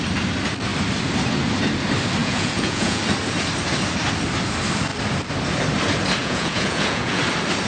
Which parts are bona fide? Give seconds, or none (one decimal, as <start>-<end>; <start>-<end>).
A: 0.0-2.2; 3.0-6.2; 7.2-7.7